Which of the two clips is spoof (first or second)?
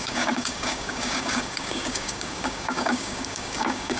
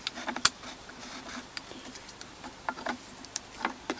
first